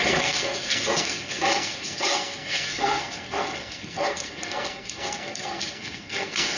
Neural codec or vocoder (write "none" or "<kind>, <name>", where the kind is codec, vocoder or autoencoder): codec, SNAC